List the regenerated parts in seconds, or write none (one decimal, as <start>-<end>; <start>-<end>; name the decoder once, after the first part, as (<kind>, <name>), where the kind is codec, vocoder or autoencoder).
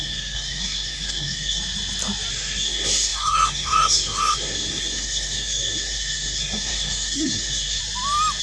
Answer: 0.0-1.6 (codec, SNAC); 2.3-7.8